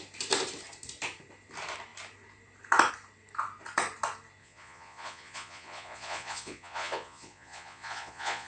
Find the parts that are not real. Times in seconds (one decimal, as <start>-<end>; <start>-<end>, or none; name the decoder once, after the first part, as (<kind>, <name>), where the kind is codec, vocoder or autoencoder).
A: 4.4-8.5 (vocoder, Vocos)